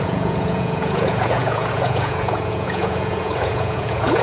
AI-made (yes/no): yes